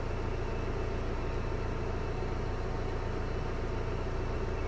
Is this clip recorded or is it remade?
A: recorded